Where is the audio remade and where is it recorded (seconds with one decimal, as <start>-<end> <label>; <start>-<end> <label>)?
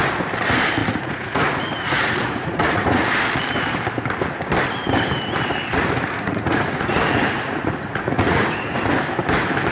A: 0.0-0.8 recorded; 0.8-3.0 remade; 3.0-5.7 recorded; 5.7-8.8 remade; 8.8-9.7 recorded